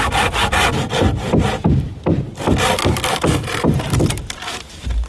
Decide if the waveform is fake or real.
real